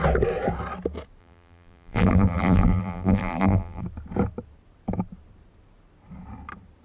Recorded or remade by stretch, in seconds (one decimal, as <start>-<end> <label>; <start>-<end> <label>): 0.0-1.2 recorded; 1.2-3.8 remade; 3.8-6.8 recorded